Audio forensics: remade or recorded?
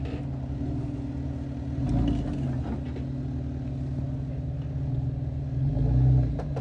recorded